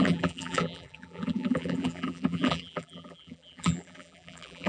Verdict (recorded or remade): remade